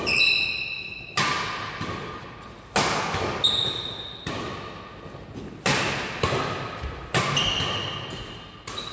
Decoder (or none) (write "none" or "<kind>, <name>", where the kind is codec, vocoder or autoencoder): none